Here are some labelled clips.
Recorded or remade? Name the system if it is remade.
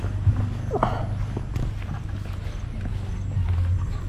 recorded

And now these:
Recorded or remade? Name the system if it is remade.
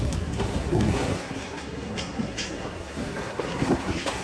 remade, codec, SNAC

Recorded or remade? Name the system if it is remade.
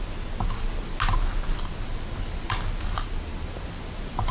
recorded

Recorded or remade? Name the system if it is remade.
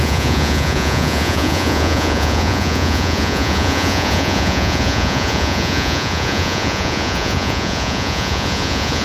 remade, vocoder, Vocos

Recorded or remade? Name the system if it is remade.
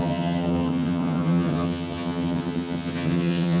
remade, vocoder, HiFi-GAN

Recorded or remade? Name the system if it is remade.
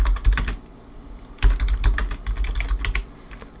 recorded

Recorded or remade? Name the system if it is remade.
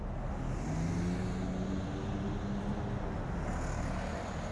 recorded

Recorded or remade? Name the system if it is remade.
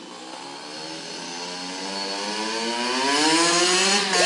recorded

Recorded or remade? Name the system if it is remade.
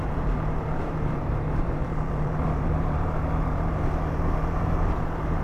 remade, vocoder, BigVGAN v2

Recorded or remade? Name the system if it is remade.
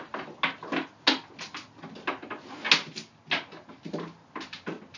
recorded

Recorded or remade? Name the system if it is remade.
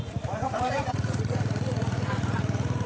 remade, vocoder, Vocos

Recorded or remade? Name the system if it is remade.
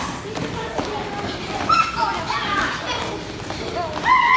recorded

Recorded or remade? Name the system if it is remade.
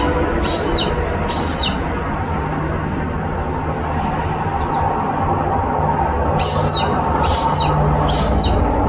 recorded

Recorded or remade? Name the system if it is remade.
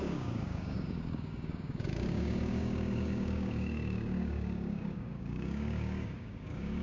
remade, codec, DAC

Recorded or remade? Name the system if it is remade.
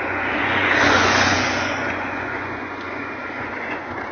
remade, vocoder, Vocos